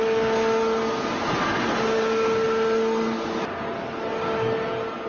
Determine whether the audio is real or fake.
real